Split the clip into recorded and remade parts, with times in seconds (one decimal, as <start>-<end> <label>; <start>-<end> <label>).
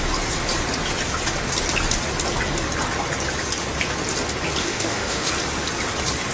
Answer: 0.0-4.6 recorded; 4.6-5.3 remade; 5.3-6.3 recorded